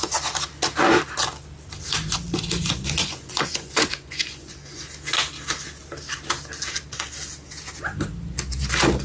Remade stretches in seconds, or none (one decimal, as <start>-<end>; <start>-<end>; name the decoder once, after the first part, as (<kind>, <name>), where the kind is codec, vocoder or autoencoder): 3.0-4.8 (vocoder, Vocos)